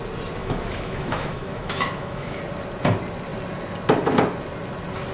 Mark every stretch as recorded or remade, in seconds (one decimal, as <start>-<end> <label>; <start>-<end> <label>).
0.0-0.4 recorded; 0.4-2.4 remade; 2.4-5.1 recorded